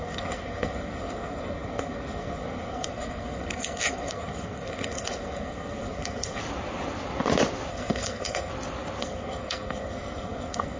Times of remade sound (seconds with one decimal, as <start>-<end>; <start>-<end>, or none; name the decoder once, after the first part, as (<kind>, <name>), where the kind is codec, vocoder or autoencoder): 0.0-6.4 (codec, SNAC); 7.7-8.5; 9.0-10.8

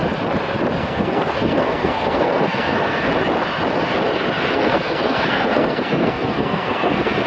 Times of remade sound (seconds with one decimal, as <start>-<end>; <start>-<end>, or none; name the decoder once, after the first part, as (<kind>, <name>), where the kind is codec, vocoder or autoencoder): 0.8-3.1 (codec, SNAC); 4.5-7.3